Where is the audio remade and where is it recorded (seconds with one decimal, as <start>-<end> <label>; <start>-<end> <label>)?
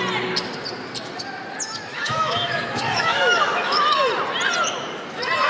0.0-1.9 recorded; 1.9-4.0 remade; 4.0-5.5 recorded